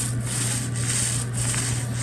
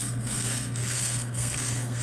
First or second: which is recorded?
first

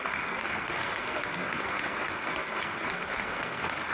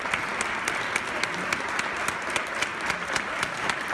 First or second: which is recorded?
second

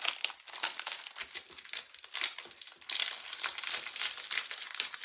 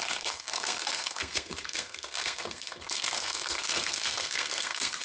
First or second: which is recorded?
first